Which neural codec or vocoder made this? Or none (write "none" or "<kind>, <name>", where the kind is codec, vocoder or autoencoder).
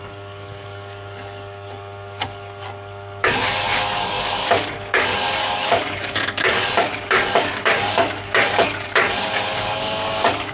codec, DAC